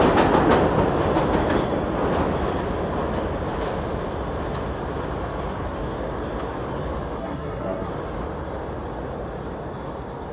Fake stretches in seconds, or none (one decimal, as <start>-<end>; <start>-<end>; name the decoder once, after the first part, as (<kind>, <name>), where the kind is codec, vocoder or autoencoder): 7.2-7.9 (codec, SNAC)